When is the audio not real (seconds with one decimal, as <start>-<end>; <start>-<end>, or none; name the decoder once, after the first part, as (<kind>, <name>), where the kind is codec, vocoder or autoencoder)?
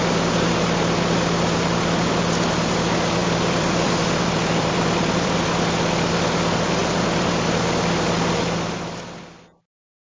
3.2-5.5 (vocoder, BigVGAN v2); 6.8-7.3